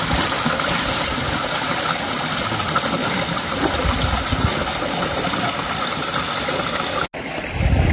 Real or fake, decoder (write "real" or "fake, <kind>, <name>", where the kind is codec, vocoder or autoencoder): real